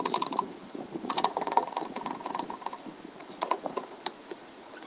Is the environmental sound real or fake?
fake